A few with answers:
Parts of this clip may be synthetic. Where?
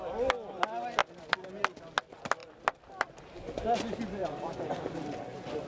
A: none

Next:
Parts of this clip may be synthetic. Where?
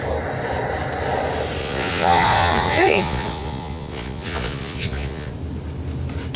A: 1.6-5.3 (vocoder, Vocos)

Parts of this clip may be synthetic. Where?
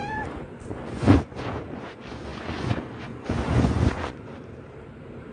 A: 0.0-4.3 (vocoder, Vocos)